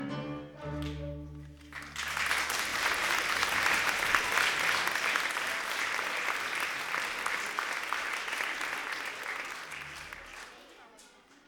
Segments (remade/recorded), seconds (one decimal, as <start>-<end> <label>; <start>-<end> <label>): 0.0-2.7 recorded; 2.7-4.3 remade; 4.3-11.5 recorded

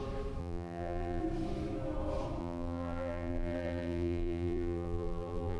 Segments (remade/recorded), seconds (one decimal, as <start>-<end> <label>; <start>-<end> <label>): 0.0-0.4 recorded; 0.4-1.2 remade; 1.2-2.4 recorded; 2.4-5.6 remade